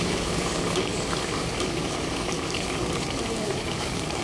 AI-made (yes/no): yes